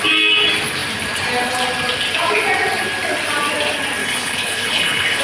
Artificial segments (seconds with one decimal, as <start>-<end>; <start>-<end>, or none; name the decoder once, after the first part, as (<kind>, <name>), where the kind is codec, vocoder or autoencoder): 4.0-5.2 (codec, HILCodec)